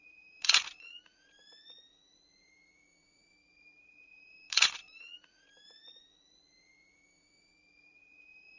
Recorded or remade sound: remade